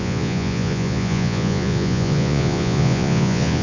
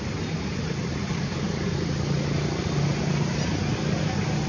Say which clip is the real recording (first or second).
second